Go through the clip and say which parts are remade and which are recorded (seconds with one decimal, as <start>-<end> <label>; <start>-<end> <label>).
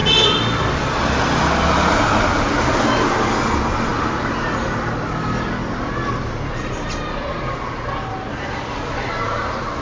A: 0.0-9.8 recorded